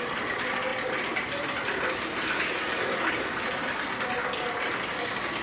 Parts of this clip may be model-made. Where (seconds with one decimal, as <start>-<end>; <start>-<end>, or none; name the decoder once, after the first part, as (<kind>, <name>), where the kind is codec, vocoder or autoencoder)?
0.7-3.9 (vocoder, BigVGAN v2)